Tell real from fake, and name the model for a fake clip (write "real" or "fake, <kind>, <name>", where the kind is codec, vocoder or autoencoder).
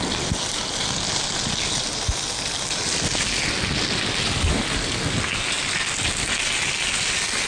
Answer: real